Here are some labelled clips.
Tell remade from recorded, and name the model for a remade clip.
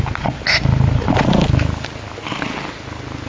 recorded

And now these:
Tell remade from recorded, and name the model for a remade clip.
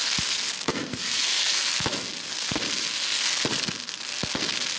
remade, codec, SNAC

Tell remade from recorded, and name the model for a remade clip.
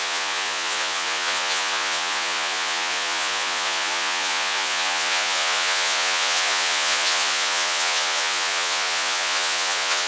remade, vocoder, Vocos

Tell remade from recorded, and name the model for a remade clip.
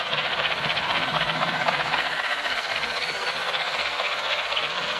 remade, codec, SNAC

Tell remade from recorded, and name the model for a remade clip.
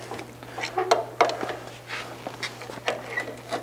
recorded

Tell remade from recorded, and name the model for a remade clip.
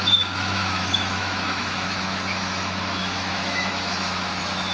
remade, autoencoder, DAC-VAE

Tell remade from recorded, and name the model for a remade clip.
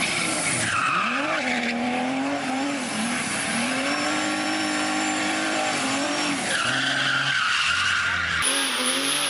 remade, vocoder, BigVGAN v2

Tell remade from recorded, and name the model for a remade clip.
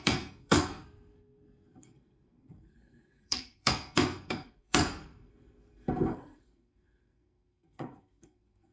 remade, codec, SNAC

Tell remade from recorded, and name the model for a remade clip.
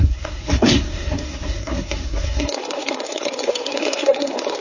remade, codec, SNAC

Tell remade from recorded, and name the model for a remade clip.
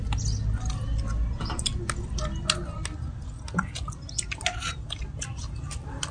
recorded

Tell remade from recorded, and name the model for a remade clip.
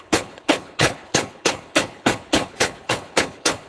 remade, codec, HILCodec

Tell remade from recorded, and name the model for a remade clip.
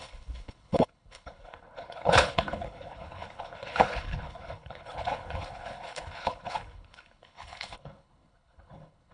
remade, codec, HILCodec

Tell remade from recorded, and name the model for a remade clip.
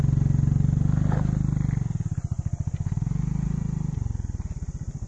recorded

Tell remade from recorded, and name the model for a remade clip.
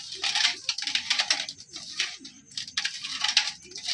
recorded